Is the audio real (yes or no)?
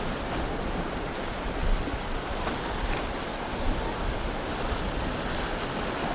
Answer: yes